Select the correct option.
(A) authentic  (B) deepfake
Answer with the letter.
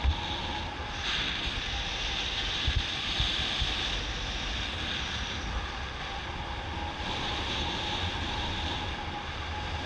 A